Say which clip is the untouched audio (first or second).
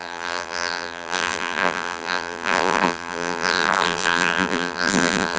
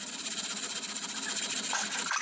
second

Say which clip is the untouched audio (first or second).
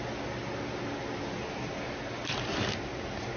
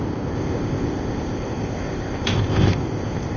first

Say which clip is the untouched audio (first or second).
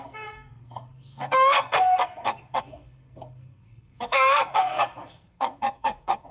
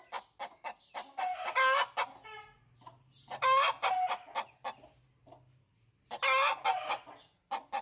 second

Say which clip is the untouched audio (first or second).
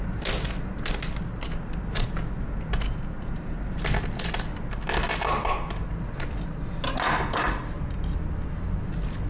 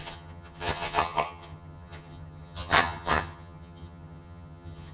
first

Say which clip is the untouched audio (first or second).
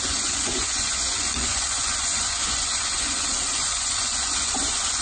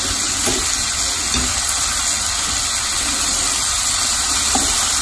second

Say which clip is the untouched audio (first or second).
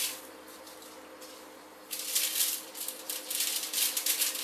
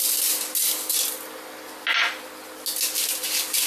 second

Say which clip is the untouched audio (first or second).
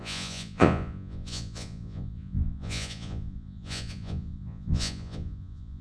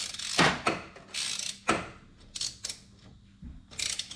second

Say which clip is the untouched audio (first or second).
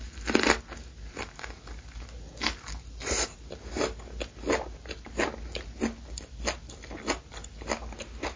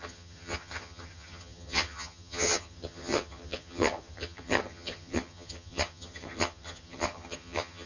first